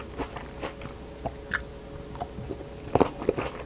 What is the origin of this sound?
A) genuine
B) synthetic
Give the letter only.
A